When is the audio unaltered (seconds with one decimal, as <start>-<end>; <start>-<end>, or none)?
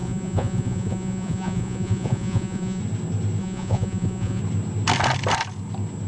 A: 2.8-3.4; 4.4-6.1